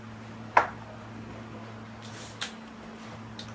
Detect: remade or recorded recorded